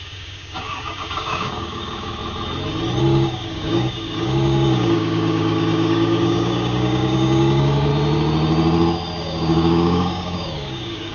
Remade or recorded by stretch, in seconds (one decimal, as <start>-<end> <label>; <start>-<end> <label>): 0.0-2.2 remade; 2.2-3.0 recorded; 3.0-7.9 remade; 7.9-9.2 recorded; 9.2-11.1 remade